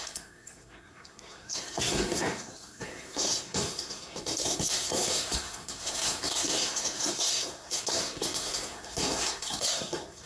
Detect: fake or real fake